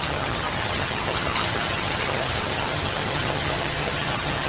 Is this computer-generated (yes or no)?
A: yes